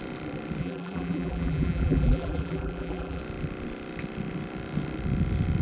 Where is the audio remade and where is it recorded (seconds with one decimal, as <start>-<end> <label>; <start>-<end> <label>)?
0.0-0.6 recorded; 0.6-3.2 remade; 3.2-5.6 recorded